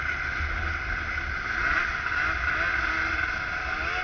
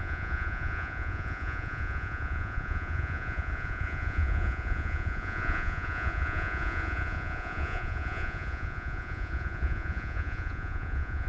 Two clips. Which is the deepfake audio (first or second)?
second